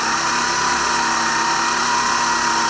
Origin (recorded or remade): recorded